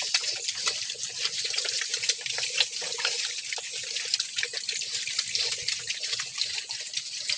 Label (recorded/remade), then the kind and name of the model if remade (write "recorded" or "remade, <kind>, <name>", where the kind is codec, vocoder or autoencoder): recorded